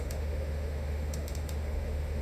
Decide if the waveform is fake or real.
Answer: fake